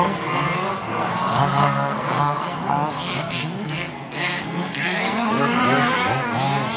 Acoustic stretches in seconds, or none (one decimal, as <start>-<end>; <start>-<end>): 5.6-6.8